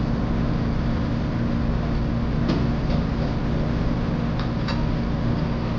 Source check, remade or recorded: recorded